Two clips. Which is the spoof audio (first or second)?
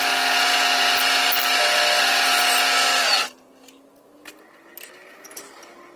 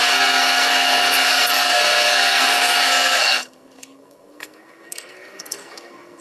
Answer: second